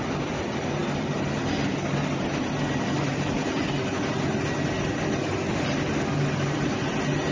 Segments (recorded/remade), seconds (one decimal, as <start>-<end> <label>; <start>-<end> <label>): 0.0-7.3 recorded